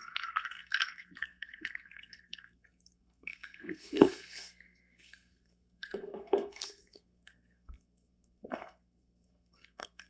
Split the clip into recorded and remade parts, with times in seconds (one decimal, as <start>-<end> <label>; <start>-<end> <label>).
0.0-10.1 remade